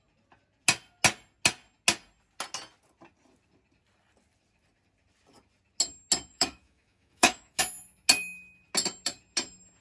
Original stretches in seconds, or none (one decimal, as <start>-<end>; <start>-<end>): 0.0-6.3; 7.6-9.8